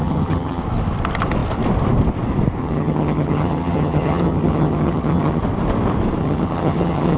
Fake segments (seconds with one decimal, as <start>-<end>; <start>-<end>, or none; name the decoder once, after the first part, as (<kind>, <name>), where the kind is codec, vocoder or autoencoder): 0.0-0.6 (vocoder, HiFi-GAN); 2.6-5.4; 6.2-7.2